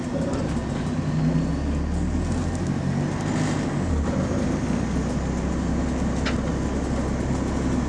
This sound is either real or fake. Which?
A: real